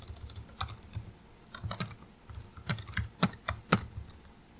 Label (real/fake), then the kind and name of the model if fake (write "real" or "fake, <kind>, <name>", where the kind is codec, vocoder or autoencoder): real